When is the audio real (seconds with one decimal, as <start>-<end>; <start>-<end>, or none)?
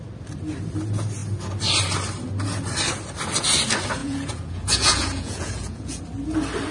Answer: 0.0-4.0; 6.0-6.7